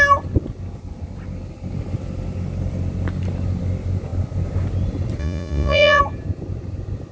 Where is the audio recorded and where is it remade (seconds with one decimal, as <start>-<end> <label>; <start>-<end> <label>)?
0.0-5.2 recorded; 5.2-6.0 remade; 6.0-7.1 recorded

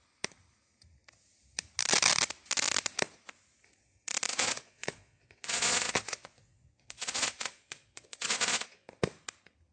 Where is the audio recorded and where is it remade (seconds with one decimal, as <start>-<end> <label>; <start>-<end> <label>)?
0.0-4.3 recorded; 4.3-8.9 remade; 8.9-9.7 recorded